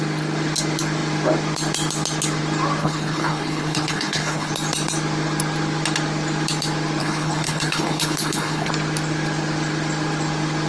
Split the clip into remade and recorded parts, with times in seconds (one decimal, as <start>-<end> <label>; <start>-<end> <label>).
0.0-2.8 recorded; 2.8-4.5 remade; 4.5-7.0 recorded; 7.0-8.7 remade; 8.7-10.7 recorded